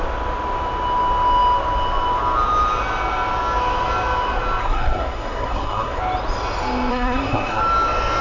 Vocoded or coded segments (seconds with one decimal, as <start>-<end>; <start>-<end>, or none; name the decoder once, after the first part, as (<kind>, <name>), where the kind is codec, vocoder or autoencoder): 4.6-6.0 (codec, SNAC); 6.9-7.6